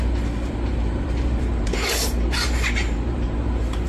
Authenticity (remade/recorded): remade